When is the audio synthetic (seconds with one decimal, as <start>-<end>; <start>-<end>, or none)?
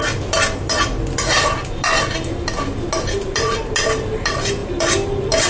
none